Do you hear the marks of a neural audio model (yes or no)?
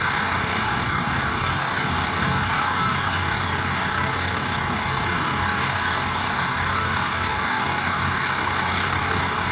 yes